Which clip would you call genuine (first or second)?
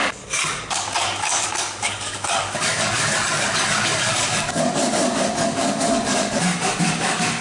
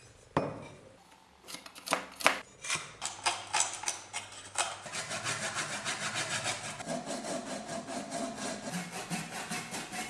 second